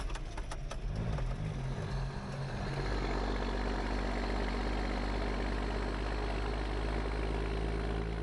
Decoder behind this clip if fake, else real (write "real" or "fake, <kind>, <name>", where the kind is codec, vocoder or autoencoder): real